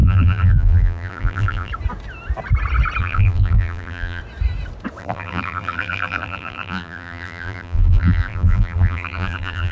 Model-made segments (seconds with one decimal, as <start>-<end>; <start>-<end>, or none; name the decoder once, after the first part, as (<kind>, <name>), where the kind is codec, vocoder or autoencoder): 0.0-1.7 (vocoder, BigVGAN v2); 3.0-4.2; 5.0-9.7